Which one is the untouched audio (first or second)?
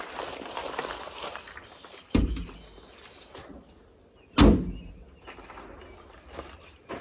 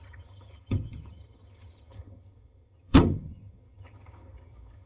first